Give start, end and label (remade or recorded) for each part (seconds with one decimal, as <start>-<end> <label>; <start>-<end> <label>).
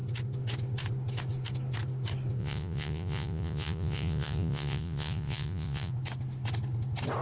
0.0-2.4 recorded; 2.4-5.9 remade; 5.9-7.2 recorded